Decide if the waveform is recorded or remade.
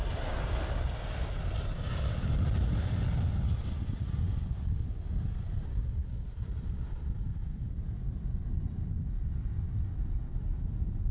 recorded